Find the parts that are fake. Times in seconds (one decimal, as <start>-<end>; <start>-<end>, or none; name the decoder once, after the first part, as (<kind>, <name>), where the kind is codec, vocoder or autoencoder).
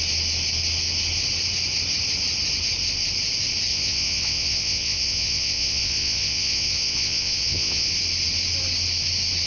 3.7-7.9 (vocoder, WaveNeXt)